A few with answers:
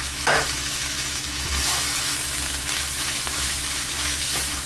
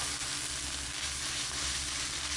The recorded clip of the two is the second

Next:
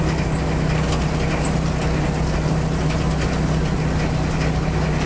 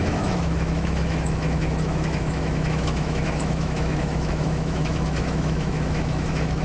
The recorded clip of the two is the first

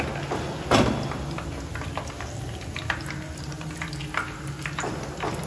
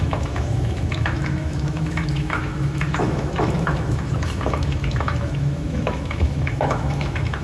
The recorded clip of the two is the first